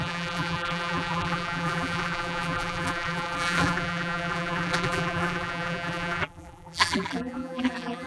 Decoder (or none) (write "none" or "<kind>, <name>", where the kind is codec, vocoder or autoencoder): vocoder, BigVGAN v2